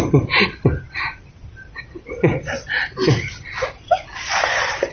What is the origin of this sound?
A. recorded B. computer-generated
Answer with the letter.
A